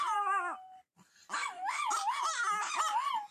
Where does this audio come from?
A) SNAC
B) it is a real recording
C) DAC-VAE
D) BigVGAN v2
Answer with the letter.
B